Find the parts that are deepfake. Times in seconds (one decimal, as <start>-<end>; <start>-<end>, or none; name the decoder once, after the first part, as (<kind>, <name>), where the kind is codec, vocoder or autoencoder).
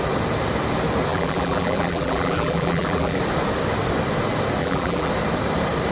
1.1-3.2 (vocoder, BigVGAN v2); 4.6-5.1